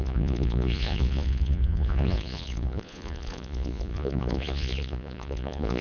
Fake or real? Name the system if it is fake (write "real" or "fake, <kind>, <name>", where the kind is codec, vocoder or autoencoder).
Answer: fake, vocoder, Vocos